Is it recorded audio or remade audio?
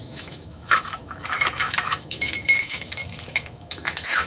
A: remade